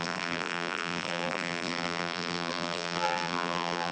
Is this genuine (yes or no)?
no